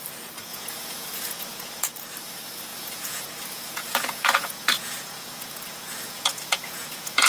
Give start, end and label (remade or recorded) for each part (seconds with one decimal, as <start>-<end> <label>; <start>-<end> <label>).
0.0-0.5 recorded; 0.5-1.9 remade; 1.9-2.7 recorded; 2.7-7.3 remade